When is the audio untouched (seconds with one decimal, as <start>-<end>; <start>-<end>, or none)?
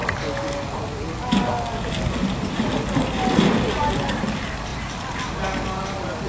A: 0.0-6.3